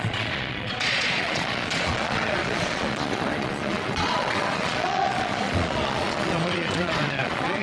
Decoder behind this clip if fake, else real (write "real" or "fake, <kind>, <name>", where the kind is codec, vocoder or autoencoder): fake, vocoder, Vocos